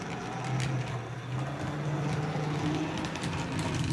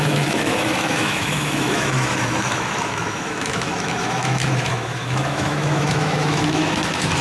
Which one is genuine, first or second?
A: first